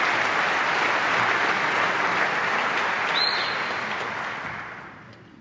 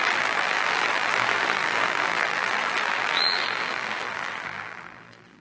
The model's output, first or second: second